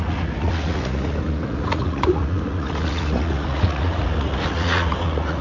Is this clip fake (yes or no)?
yes